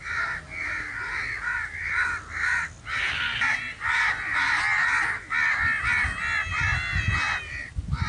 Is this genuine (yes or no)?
yes